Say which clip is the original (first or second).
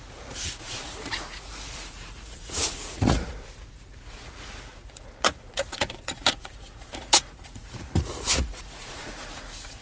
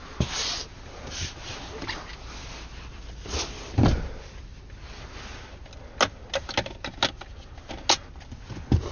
second